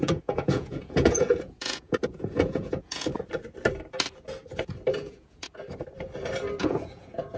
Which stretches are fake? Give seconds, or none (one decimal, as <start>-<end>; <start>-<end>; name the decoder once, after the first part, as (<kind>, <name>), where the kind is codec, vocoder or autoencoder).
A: 0.0-3.1 (vocoder, Vocos); 4.9-5.5; 6.6-7.4